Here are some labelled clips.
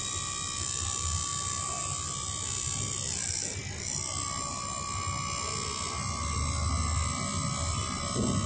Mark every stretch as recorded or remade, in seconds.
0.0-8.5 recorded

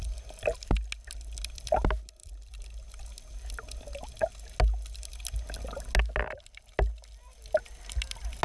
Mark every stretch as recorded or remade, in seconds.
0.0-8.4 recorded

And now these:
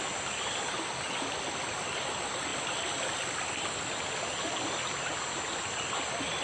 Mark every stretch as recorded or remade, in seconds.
0.0-6.4 recorded

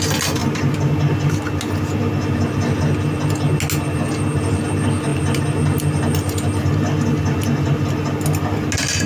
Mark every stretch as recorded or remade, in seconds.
0.0-9.1 recorded